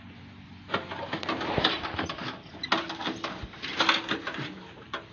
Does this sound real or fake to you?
real